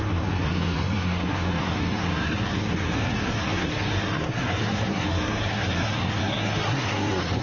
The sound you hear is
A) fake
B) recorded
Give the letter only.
A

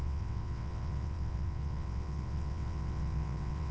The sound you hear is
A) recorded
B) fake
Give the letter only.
B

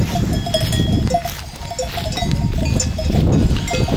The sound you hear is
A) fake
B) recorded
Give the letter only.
B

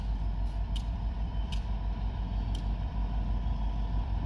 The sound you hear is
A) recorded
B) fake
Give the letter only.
B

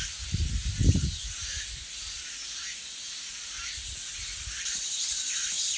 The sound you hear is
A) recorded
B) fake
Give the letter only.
A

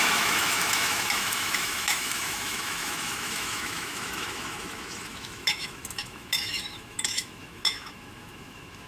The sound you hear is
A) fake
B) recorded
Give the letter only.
A